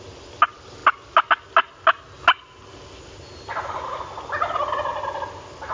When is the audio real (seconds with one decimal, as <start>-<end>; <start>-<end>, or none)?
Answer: 0.0-5.7